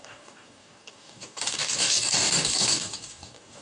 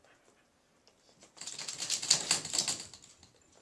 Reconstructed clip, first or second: first